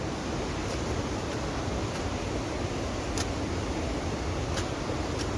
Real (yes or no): yes